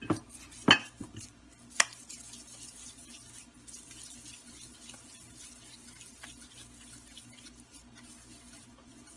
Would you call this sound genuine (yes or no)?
yes